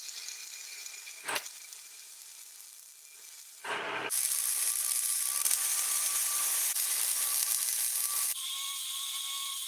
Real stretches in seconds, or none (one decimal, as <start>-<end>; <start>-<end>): 2.2-3.4; 7.3-8.2